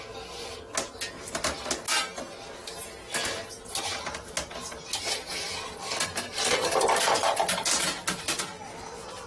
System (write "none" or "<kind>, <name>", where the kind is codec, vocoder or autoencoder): none